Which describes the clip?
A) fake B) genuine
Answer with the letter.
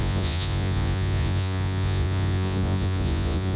A